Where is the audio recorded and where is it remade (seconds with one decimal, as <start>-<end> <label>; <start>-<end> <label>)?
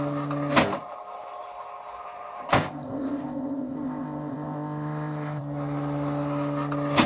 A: 0.0-2.5 recorded; 2.5-5.4 remade; 5.4-7.1 recorded